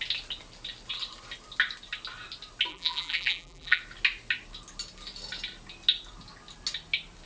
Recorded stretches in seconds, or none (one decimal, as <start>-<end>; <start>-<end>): 0.0-2.7; 3.8-7.3